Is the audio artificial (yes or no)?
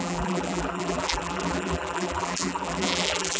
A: yes